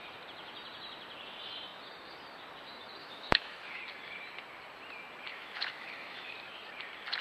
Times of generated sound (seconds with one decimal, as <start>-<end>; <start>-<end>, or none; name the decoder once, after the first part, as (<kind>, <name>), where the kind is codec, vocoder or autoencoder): 3.0-3.8 (autoencoder, DAC-VAE); 5.3-6.3